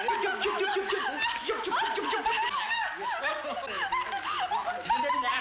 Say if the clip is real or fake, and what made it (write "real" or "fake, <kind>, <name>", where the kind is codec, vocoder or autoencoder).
real